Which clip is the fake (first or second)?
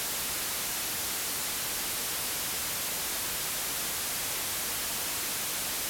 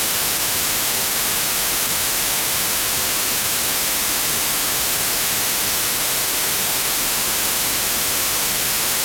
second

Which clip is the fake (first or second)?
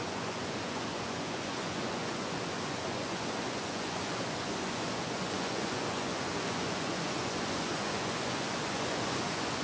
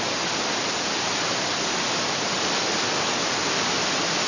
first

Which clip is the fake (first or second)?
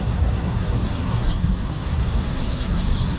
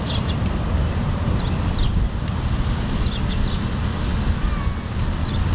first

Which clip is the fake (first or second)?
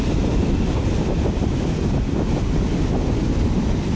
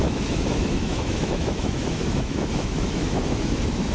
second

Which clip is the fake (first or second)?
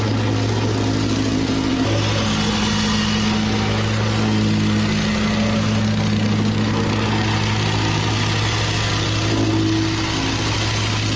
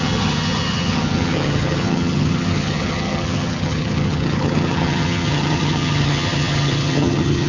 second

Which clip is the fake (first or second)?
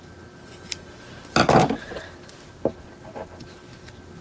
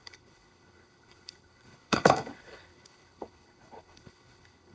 second